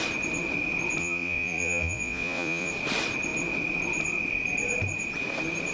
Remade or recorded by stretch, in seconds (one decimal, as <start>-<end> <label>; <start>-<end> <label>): 0.0-1.0 recorded; 1.0-2.7 remade; 2.7-5.7 recorded